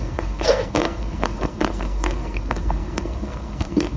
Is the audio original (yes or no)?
no